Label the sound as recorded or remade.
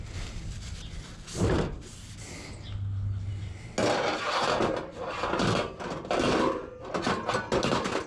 recorded